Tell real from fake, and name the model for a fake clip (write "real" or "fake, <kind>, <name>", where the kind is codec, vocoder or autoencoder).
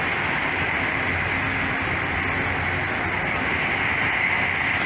real